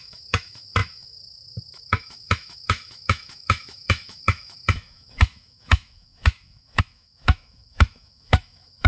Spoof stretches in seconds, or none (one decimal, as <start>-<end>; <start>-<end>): 0.0-8.9